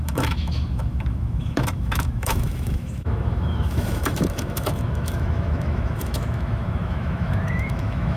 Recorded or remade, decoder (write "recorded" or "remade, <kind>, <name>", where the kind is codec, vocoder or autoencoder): remade, autoencoder, DAC-VAE